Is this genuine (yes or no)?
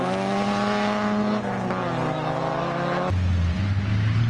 yes